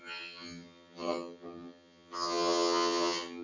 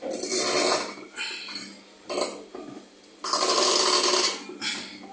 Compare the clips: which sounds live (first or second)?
second